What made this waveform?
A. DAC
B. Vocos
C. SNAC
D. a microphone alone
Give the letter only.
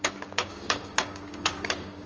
A